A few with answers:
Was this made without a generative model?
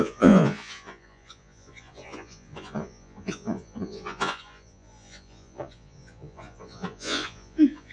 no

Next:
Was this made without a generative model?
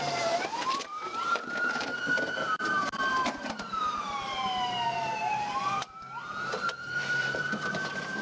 no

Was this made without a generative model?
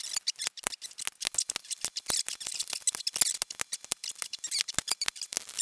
yes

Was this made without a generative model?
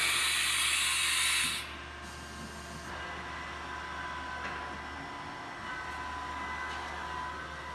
yes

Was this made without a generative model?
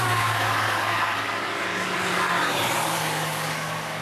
no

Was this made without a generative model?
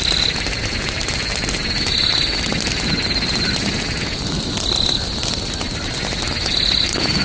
yes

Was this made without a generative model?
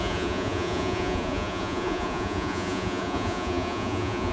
no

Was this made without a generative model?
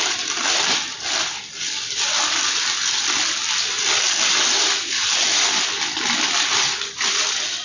yes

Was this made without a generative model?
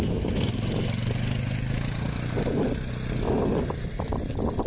yes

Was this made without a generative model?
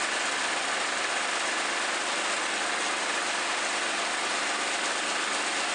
yes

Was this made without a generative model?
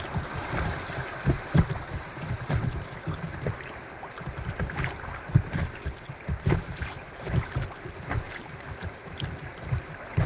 yes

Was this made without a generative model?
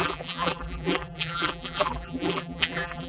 no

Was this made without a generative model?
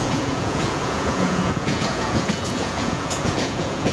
no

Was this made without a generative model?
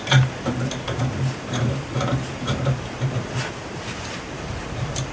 no